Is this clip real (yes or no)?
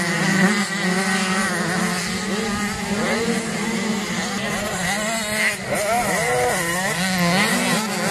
yes